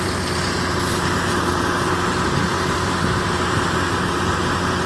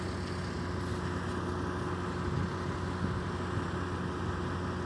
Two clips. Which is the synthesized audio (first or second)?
first